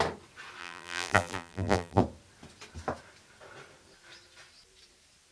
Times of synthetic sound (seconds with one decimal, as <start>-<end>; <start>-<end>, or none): 0.6-2.0